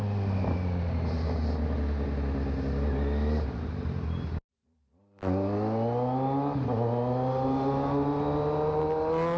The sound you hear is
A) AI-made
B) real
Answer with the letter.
B